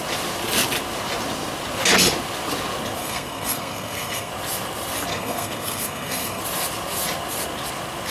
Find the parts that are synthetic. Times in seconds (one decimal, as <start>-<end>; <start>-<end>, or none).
3.0-4.3; 5.1-6.4